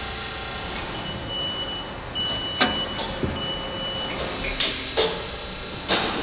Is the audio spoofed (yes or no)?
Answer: no